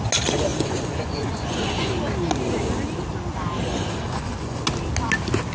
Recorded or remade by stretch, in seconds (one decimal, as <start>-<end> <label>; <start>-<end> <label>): 0.0-0.5 recorded; 0.5-1.9 remade; 1.9-3.7 recorded; 3.7-4.6 remade; 4.6-5.5 recorded